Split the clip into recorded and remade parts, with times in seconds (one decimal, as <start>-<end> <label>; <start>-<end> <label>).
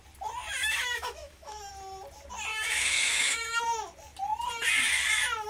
0.0-0.6 recorded; 0.6-1.7 remade; 1.7-2.5 recorded; 2.5-3.6 remade; 3.6-5.5 recorded